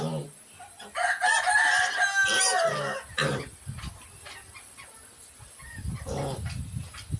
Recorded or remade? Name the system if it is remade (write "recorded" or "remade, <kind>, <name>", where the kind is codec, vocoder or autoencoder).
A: recorded